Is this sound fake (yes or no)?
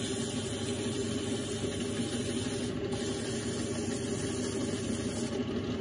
no